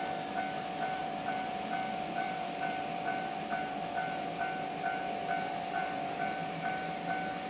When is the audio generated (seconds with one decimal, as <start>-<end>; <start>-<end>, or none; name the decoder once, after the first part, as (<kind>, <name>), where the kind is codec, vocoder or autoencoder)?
1.0-4.3 (vocoder, BigVGAN v2); 5.8-6.4